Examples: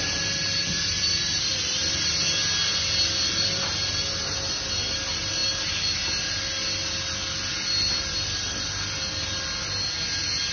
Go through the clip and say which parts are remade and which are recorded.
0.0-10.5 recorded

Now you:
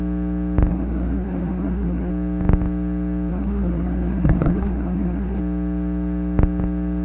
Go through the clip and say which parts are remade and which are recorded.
0.0-0.7 recorded; 0.7-2.1 remade; 2.1-3.3 recorded; 3.3-5.4 remade; 5.4-7.0 recorded

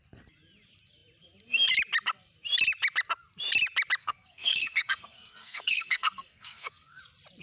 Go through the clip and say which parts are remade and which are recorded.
0.0-4.0 recorded; 4.0-7.0 remade; 7.0-7.4 recorded

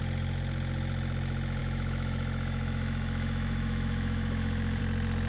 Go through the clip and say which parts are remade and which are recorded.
0.0-1.6 recorded; 1.6-4.8 remade; 4.8-5.3 recorded

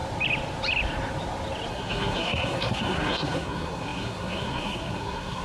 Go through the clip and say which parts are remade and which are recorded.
0.0-1.7 recorded; 1.7-5.4 remade

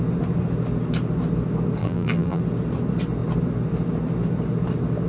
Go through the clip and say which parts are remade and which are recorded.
0.0-1.8 recorded; 1.8-2.4 remade; 2.4-5.1 recorded

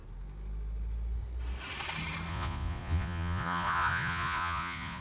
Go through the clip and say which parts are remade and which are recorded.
0.0-2.3 recorded; 2.3-5.0 remade

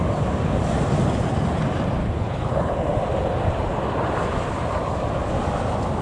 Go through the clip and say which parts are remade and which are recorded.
0.0-2.0 recorded; 2.0-2.7 remade; 2.7-6.0 recorded